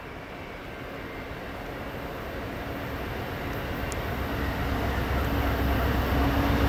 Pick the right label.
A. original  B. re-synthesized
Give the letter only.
A